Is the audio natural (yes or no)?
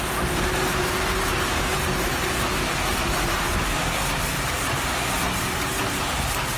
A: no